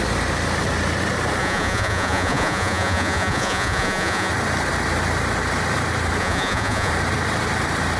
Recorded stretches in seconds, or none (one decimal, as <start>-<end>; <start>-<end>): 0.0-1.4; 4.3-6.2; 6.9-8.0